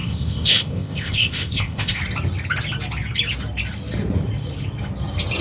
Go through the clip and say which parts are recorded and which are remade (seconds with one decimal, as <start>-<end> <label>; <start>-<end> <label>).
0.0-2.0 remade; 2.0-5.4 recorded